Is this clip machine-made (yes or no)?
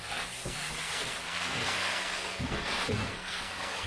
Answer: yes